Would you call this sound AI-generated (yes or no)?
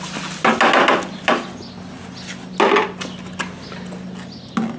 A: no